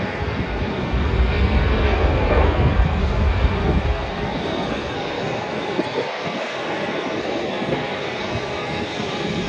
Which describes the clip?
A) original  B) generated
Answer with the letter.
B